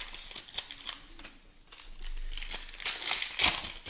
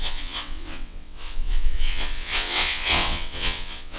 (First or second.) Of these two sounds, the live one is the first